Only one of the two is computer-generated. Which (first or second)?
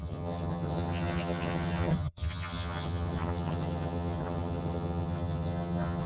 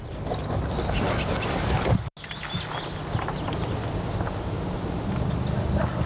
first